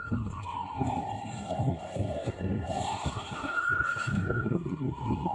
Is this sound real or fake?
fake